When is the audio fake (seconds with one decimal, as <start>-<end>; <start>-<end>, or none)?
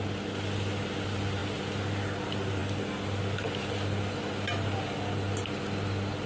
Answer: none